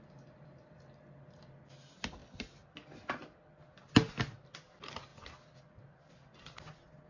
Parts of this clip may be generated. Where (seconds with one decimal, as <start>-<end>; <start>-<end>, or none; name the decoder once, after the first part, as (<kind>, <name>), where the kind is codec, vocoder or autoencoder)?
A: none